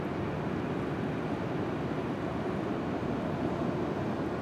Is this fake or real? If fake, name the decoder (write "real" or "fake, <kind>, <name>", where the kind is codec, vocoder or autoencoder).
real